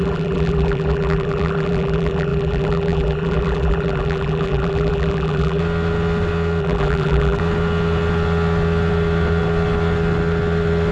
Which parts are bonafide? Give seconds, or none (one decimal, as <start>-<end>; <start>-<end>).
5.6-6.6; 7.4-10.9